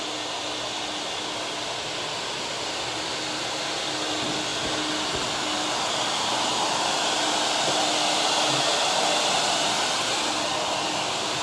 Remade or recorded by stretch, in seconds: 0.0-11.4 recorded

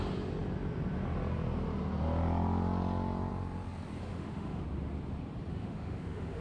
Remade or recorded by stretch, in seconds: 0.0-4.0 recorded; 4.0-4.6 remade; 4.6-5.5 recorded; 5.5-6.4 remade

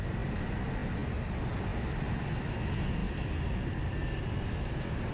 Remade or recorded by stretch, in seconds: 0.0-5.1 recorded

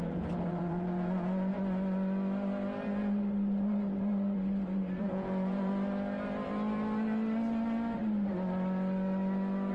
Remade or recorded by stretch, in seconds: 0.0-1.5 remade; 1.5-5.0 recorded; 5.0-5.7 remade; 5.7-9.7 recorded

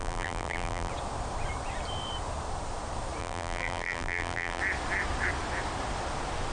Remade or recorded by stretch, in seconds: 0.0-0.9 remade; 0.9-3.2 recorded; 3.2-4.6 remade; 4.6-6.5 recorded